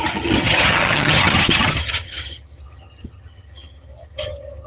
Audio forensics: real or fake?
fake